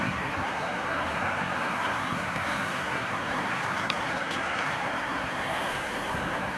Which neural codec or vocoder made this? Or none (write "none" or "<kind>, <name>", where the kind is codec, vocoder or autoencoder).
codec, SNAC